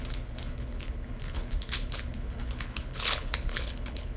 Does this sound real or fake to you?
fake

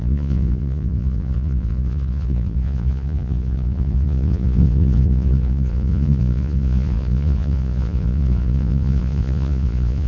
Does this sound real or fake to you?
fake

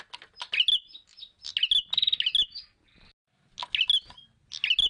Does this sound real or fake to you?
real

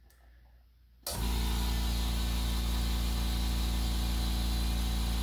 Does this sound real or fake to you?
real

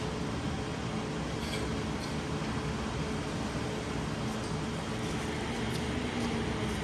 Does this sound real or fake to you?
real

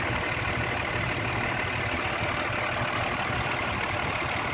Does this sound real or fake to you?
real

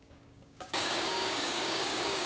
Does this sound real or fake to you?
fake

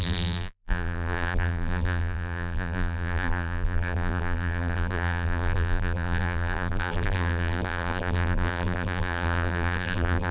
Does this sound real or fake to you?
fake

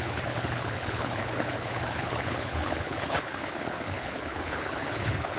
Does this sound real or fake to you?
fake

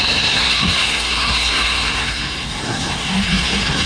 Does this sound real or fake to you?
fake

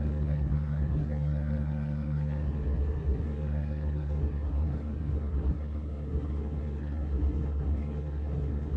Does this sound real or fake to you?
fake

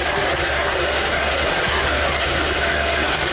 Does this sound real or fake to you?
fake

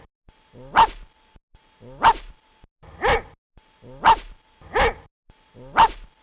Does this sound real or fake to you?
real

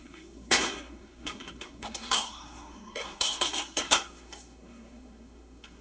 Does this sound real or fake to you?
fake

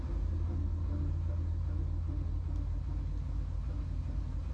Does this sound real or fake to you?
real